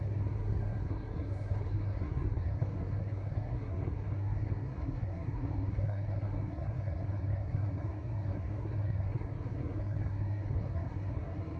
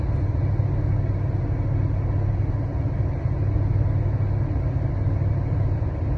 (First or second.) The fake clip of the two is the first